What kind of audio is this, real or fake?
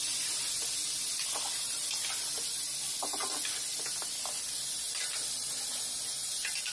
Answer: real